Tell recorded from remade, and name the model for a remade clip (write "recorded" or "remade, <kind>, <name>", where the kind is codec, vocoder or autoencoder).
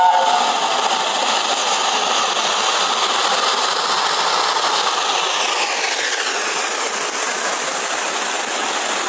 recorded